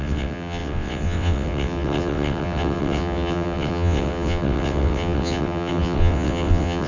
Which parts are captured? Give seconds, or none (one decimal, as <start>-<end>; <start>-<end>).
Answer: none